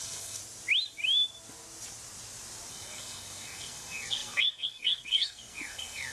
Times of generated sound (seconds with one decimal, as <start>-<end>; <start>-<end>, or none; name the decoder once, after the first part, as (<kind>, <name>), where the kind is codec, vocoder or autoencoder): 0.0-0.4 (codec, SNAC); 2.7-6.1